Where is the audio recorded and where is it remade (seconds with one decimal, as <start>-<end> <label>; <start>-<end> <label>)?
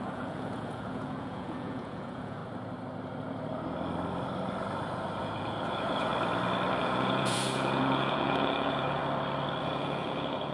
0.0-2.4 remade; 2.4-5.2 recorded; 5.2-6.1 remade; 6.1-6.8 recorded; 6.8-9.0 remade; 9.0-9.6 recorded; 9.6-10.5 remade